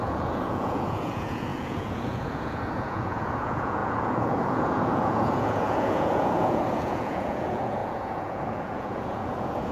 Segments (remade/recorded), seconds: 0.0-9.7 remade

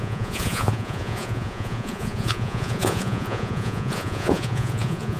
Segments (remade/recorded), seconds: 0.0-5.2 remade

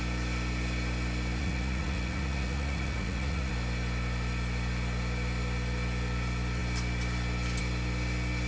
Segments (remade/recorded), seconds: 0.0-1.4 recorded; 1.4-3.5 remade; 3.5-8.5 recorded